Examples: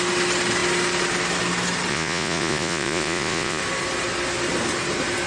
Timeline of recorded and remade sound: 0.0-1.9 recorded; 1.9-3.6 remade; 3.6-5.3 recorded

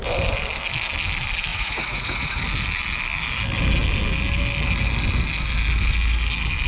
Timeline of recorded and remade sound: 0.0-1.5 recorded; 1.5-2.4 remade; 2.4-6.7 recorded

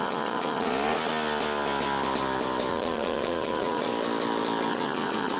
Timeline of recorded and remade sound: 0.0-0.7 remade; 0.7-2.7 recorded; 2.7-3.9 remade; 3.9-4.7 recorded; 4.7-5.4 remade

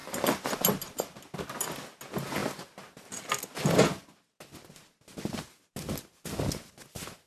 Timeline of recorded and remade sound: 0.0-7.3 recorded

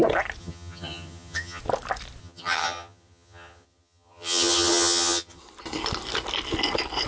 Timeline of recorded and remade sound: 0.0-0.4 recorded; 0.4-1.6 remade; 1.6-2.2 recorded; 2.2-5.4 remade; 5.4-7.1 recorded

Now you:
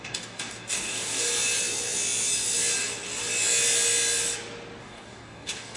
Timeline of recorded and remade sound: 0.0-1.3 remade; 1.3-4.8 recorded; 4.8-5.8 remade